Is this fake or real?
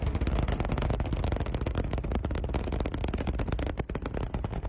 real